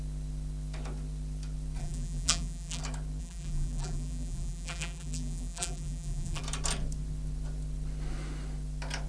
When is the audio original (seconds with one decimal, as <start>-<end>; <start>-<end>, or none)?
0.0-1.8; 2.8-3.2; 6.4-9.1